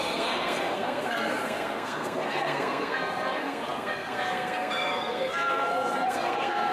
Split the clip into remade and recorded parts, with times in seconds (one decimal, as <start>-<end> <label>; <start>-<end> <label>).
0.0-6.7 remade